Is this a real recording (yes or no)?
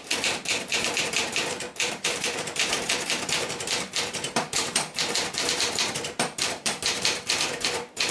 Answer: no